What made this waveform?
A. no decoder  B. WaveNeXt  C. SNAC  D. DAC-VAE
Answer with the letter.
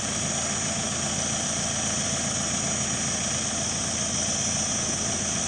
A